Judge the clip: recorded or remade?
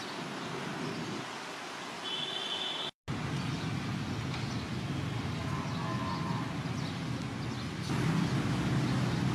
recorded